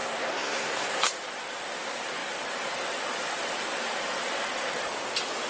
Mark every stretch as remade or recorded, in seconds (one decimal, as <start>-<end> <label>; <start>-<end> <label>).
0.0-1.0 remade; 1.0-5.5 recorded